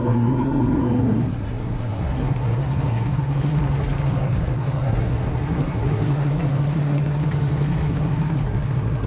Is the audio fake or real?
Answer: fake